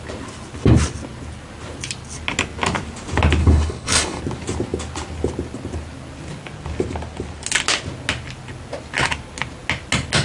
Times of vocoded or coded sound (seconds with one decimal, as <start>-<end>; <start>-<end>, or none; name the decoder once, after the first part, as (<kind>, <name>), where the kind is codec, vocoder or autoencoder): 3.4-4.2 (codec, HILCodec)